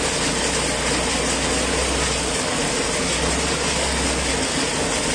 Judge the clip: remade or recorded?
recorded